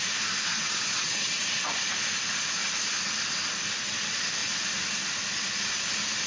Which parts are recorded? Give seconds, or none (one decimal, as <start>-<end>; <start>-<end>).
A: 0.0-0.5; 1.7-6.3